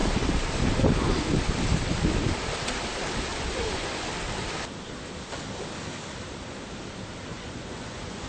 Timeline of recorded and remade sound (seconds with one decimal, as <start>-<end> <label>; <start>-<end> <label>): 0.0-3.3 recorded; 3.3-4.1 remade; 4.1-7.3 recorded; 7.3-8.3 remade